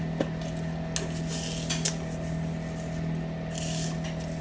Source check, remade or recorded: recorded